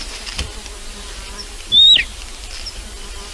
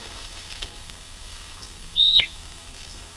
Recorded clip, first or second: first